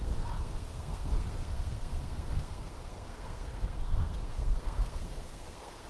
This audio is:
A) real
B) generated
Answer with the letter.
B